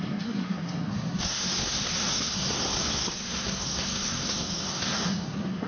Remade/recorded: remade